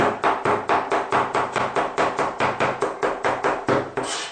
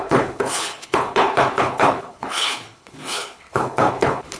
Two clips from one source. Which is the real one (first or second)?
first